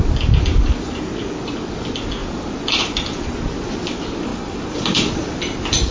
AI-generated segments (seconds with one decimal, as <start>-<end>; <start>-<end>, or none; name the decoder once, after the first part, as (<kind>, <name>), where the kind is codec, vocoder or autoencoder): none